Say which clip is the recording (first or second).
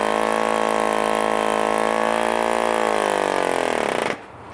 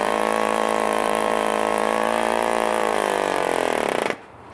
first